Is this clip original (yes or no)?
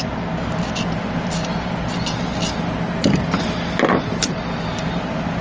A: yes